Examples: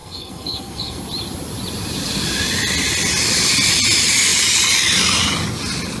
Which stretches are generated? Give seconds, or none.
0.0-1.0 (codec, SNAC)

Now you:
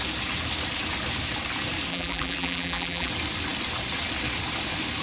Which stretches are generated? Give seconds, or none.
1.9-3.1 (vocoder, BigVGAN v2)

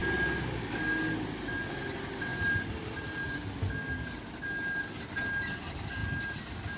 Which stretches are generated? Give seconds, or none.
none

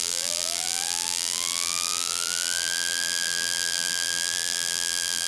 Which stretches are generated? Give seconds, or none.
0.0-5.3 (vocoder, BigVGAN v2)

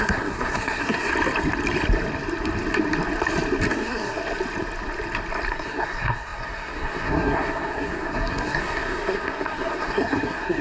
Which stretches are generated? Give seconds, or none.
0.0-1.1 (codec, SNAC); 3.7-4.2; 5.5-10.6

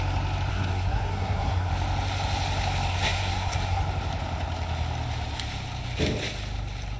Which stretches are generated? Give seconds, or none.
0.5-1.7 (codec, SNAC); 2.9-3.8

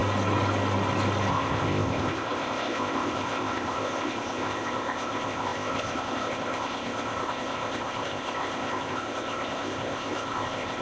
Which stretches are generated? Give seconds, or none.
1.3-10.8 (codec, ZipCodec)